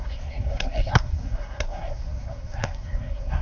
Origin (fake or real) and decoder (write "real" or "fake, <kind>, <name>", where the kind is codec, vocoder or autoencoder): fake, codec, SNAC